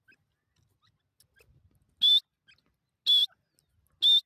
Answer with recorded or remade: recorded